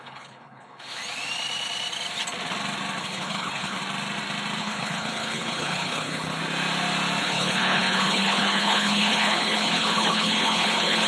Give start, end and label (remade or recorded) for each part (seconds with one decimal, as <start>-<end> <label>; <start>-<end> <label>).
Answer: 0.0-1.0 remade; 1.0-3.0 recorded; 3.0-3.8 remade; 3.8-4.6 recorded; 4.6-6.4 remade; 6.4-7.2 recorded; 7.2-11.1 remade